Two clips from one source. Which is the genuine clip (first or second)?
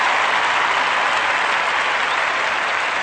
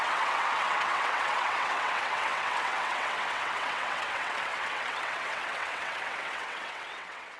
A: first